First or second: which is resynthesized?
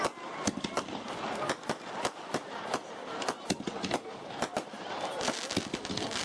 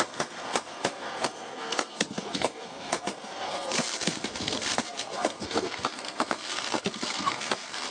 second